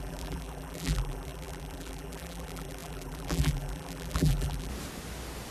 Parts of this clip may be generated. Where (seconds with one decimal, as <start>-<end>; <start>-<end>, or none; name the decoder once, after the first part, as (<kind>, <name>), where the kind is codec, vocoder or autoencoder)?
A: 0.0-4.7 (vocoder, BigVGAN v2)